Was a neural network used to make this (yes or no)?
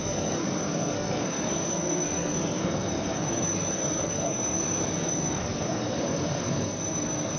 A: yes